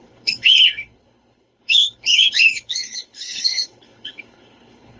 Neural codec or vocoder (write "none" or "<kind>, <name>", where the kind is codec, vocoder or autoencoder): codec, HILCodec